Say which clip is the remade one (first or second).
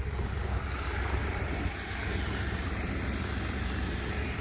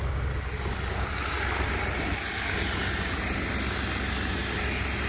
first